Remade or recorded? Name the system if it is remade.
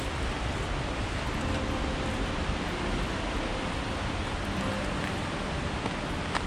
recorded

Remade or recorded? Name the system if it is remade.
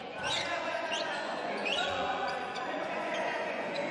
remade, vocoder, Vocos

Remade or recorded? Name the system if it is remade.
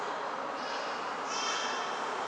recorded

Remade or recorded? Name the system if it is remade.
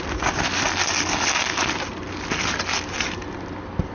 recorded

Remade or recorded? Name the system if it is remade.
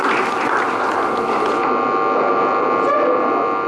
recorded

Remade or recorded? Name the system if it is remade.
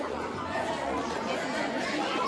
remade, vocoder, Vocos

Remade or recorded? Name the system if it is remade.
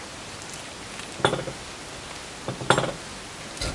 recorded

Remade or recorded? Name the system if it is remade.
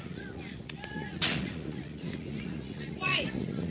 remade, vocoder, Vocos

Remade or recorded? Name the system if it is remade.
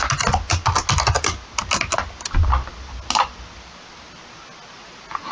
recorded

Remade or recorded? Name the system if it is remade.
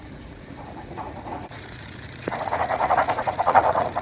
remade, vocoder, Vocos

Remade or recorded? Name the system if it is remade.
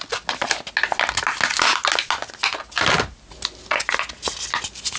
recorded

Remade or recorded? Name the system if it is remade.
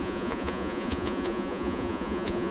remade, vocoder, Vocos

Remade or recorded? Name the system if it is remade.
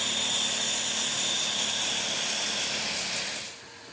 recorded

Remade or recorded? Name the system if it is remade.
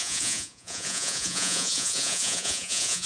remade, vocoder, Vocos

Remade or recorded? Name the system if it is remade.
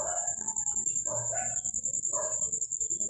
recorded